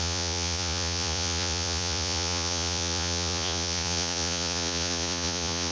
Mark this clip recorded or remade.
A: remade